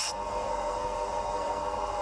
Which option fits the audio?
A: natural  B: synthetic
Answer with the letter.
B